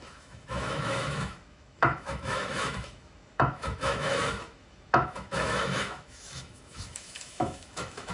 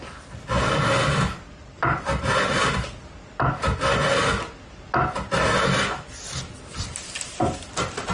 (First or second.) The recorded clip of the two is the second